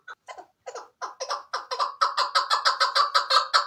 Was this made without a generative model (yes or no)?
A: yes